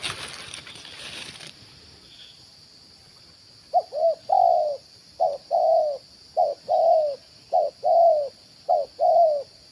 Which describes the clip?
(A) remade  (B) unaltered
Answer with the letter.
B